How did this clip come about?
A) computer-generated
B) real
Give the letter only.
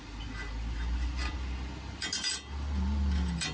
B